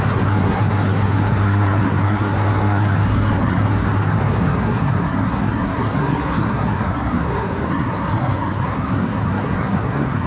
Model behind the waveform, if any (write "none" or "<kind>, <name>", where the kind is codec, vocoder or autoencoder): codec, SNAC